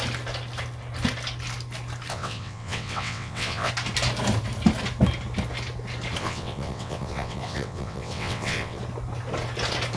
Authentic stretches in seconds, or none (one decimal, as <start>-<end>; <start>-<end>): 0.0-2.1; 3.7-6.2; 8.8-10.0